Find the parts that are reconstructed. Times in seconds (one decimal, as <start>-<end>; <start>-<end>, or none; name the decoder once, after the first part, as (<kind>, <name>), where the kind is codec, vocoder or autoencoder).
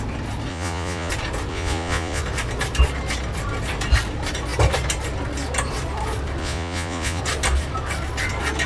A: 0.5-1.1 (vocoder, Vocos); 1.5-2.2; 6.4-7.2